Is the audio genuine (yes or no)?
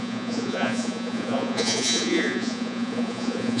no